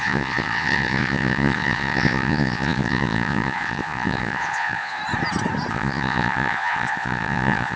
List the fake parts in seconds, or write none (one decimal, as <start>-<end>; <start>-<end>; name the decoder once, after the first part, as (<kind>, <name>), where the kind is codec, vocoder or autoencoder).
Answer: 0.0-5.0 (vocoder, Vocos); 5.7-7.8